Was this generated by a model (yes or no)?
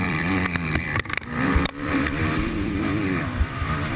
yes